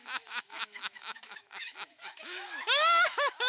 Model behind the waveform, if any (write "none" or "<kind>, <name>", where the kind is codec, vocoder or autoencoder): autoencoder, DAC-VAE